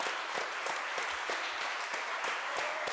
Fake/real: fake